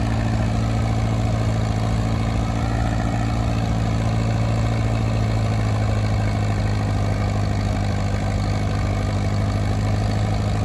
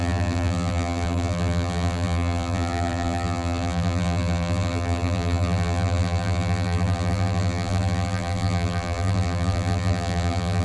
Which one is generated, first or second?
second